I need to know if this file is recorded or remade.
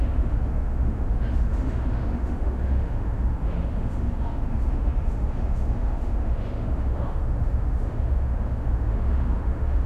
remade